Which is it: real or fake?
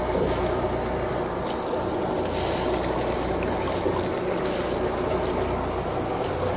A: real